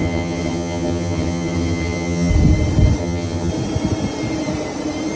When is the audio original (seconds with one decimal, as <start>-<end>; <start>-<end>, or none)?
2.3-3.0; 3.5-5.2